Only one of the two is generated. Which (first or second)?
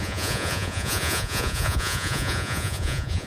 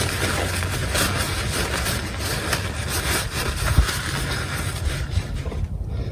first